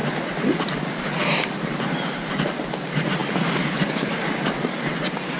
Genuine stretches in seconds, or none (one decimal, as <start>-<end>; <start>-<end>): 0.0-5.4